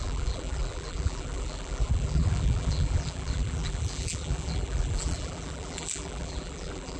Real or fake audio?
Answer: fake